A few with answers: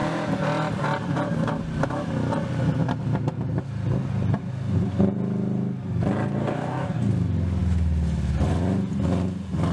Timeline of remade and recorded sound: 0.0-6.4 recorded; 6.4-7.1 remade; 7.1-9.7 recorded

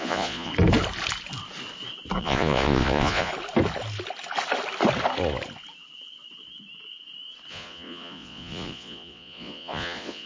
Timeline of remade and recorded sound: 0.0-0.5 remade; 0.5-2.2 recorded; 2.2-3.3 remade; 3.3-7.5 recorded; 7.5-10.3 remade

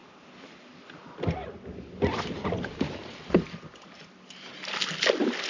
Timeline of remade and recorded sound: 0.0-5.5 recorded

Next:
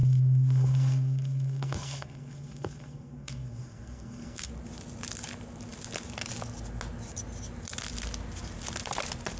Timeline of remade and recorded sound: 0.0-4.5 remade; 4.5-9.4 recorded

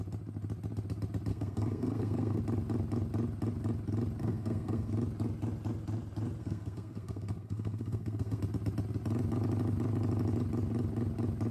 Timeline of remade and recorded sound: 0.0-1.3 recorded; 1.3-2.4 remade; 2.4-4.2 recorded; 4.2-4.9 remade; 4.9-6.4 recorded; 6.4-8.4 remade; 8.4-11.5 recorded

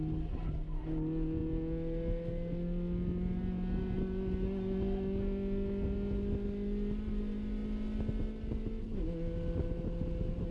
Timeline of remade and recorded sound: 0.0-10.5 recorded

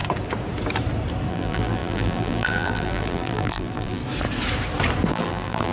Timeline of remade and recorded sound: 0.0-1.3 recorded; 1.3-4.0 remade; 4.0-5.1 recorded; 5.1-5.7 remade

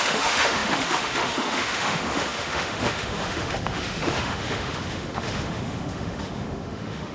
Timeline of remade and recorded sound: 0.0-7.1 remade